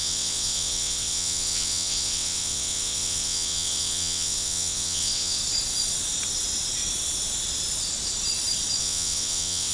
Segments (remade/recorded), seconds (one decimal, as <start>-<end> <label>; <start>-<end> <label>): 0.0-5.4 remade; 5.4-8.8 recorded; 8.8-9.7 remade